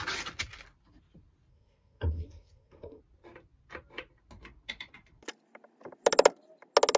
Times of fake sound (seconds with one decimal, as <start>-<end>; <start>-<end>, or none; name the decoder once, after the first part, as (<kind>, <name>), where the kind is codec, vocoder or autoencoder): 1.5-3.0 (codec, SNAC)